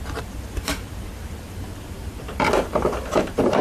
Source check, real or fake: fake